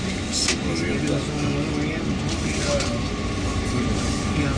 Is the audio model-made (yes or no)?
no